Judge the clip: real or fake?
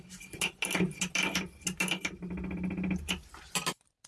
real